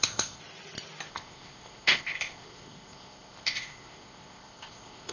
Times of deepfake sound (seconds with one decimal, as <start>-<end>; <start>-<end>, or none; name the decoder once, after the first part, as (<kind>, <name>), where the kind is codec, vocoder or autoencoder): 0.0-0.4 (codec, ZipCodec); 1.1-5.1